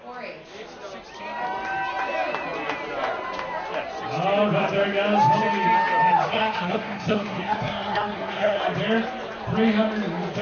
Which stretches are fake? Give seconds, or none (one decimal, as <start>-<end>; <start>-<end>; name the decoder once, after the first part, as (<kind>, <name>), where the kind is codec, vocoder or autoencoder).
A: 6.3-8.6 (codec, SNAC)